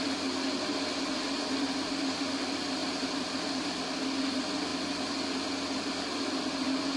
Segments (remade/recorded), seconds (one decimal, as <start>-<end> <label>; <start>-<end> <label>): 0.0-2.8 remade; 2.8-3.5 recorded; 3.5-4.7 remade; 4.7-5.5 recorded; 5.5-7.0 remade